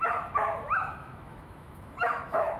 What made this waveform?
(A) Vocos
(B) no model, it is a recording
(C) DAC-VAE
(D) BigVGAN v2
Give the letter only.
C